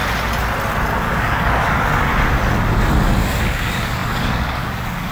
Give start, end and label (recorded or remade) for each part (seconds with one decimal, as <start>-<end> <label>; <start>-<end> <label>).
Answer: 0.0-1.0 recorded; 1.0-2.1 remade; 2.1-3.2 recorded; 3.2-5.1 remade